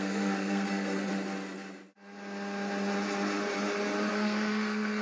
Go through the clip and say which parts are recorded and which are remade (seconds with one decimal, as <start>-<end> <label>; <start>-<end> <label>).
0.0-1.1 remade; 1.1-4.1 recorded; 4.1-5.0 remade